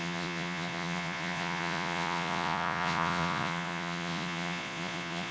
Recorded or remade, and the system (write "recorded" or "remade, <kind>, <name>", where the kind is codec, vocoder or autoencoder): remade, vocoder, Vocos